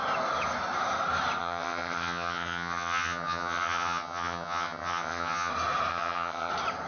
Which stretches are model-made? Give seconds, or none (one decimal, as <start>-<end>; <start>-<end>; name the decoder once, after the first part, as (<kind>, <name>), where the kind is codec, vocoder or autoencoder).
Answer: 1.4-5.5 (vocoder, HiFi-GAN); 5.9-6.5